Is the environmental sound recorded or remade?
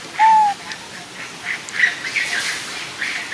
recorded